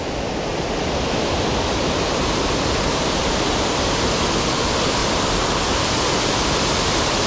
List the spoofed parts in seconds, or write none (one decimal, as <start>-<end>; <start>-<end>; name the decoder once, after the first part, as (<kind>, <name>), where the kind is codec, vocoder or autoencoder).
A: 0.0-5.0 (vocoder, BigVGAN v2); 5.7-7.3